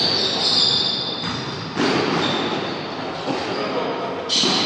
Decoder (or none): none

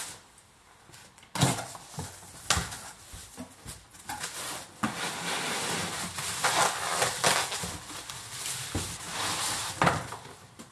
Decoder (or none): none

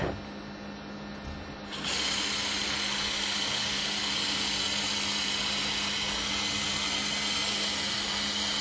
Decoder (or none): none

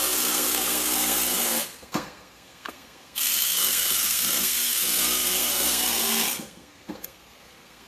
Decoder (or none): codec, SNAC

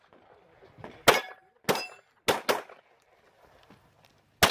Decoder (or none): none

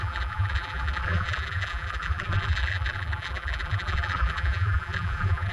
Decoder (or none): vocoder, BigVGAN v2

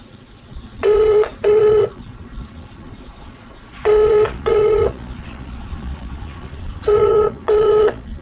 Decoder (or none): vocoder, Vocos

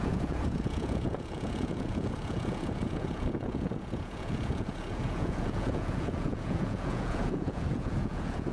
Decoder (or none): vocoder, Vocos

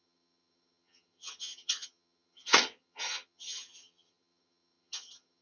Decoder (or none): vocoder, HiFi-GAN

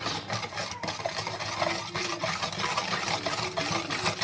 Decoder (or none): none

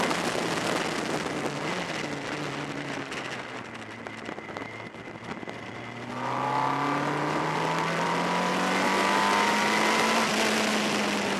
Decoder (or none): none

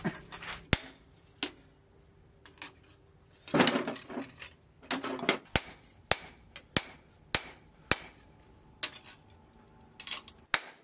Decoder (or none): none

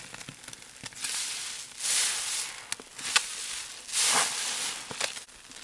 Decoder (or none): none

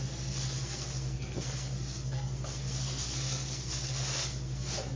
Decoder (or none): codec, SNAC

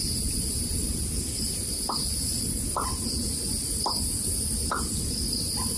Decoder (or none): vocoder, BigVGAN v2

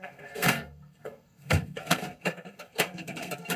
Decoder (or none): codec, SNAC